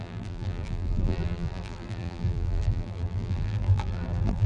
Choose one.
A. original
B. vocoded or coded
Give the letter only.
B